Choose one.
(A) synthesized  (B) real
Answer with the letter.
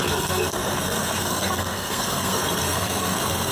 A